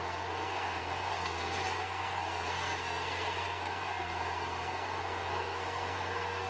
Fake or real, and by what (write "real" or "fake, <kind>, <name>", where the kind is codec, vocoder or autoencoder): fake, codec, SNAC